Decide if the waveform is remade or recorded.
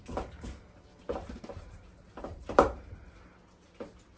recorded